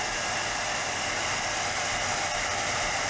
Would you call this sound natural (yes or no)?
no